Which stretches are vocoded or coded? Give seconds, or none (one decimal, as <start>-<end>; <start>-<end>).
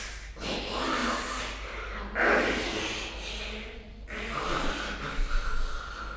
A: none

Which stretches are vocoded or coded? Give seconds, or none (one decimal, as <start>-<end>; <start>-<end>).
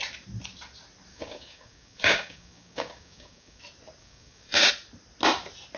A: 1.1-3.6; 4.0-4.7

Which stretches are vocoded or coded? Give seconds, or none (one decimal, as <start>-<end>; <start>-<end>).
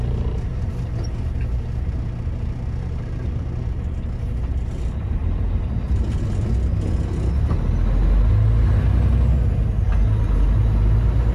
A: 5.2-6.1